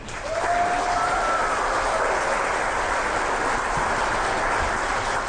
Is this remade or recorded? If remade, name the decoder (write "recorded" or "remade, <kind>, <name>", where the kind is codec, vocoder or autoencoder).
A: recorded